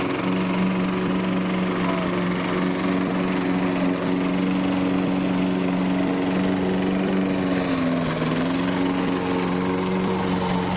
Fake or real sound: real